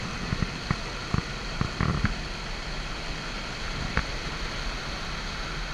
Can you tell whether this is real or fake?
real